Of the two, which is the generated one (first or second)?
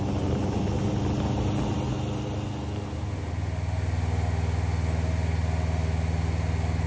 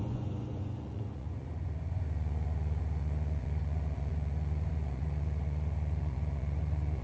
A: second